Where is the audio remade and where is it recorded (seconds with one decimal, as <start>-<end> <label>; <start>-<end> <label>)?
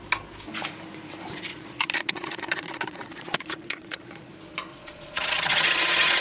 0.0-1.5 recorded; 1.5-4.3 remade; 4.3-4.7 recorded; 4.7-6.2 remade